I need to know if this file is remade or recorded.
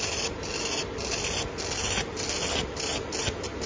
recorded